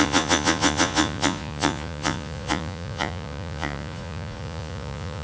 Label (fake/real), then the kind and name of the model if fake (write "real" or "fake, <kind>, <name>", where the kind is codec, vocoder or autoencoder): fake, vocoder, Vocos